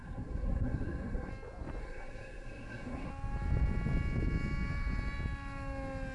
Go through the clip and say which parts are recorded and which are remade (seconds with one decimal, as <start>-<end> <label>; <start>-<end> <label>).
0.0-1.3 remade; 1.3-1.8 recorded; 1.8-3.1 remade; 3.1-6.1 recorded